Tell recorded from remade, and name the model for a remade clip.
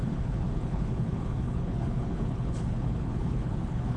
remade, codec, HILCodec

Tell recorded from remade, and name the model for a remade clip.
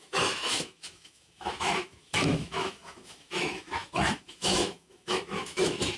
remade, autoencoder, DAC-VAE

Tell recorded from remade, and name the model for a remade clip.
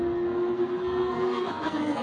remade, codec, SNAC